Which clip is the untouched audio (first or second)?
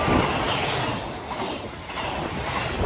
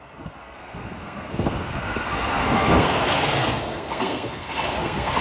first